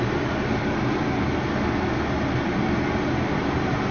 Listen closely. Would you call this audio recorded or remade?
recorded